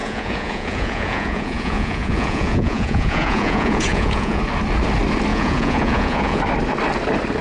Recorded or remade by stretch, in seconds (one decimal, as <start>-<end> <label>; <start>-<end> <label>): 0.0-4.4 remade; 4.4-5.3 recorded; 5.3-6.4 remade; 6.4-7.4 recorded